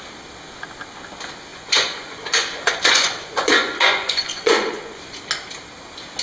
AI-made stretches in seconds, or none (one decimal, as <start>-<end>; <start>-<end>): 1.5-5.2